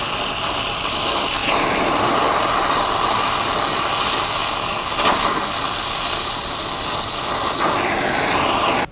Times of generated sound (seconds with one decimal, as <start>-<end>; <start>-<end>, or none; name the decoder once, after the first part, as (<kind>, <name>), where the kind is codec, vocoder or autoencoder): 1.4-2.2 (vocoder, BigVGAN v2)